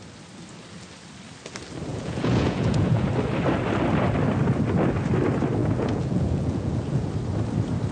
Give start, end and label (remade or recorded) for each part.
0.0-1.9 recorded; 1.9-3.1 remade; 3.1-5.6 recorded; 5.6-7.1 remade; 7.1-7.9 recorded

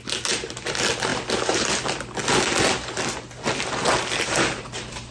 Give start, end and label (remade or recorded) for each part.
0.0-5.1 recorded

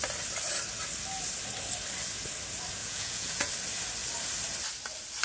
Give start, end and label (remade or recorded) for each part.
0.0-2.8 recorded; 2.8-3.5 remade; 3.5-5.2 recorded

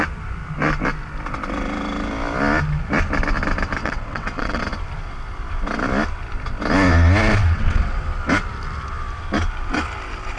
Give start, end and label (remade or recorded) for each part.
0.0-3.8 recorded; 3.8-4.6 remade; 4.6-7.4 recorded; 7.4-8.0 remade; 8.0-10.4 recorded